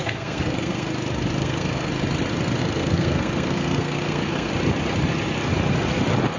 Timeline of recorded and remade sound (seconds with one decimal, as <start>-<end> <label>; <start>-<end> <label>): 0.0-0.9 remade; 0.9-1.4 recorded; 1.4-1.9 remade; 1.9-2.6 recorded; 2.6-4.5 remade; 4.5-6.4 recorded